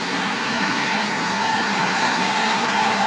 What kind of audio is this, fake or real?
fake